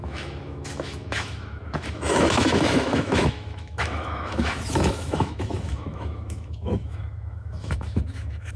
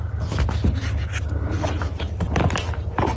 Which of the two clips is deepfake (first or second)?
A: first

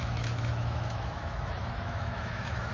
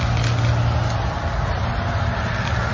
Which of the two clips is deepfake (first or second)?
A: first